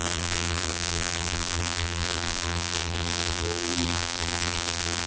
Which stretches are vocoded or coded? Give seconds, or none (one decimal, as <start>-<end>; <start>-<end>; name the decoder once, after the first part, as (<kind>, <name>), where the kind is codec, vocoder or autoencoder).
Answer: 0.0-5.1 (vocoder, BigVGAN v2)